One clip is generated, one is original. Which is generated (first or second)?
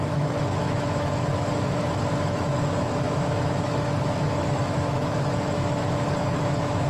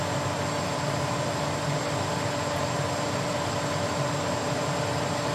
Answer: first